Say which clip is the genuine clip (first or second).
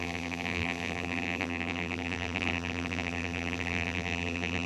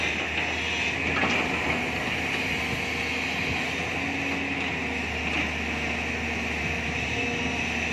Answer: second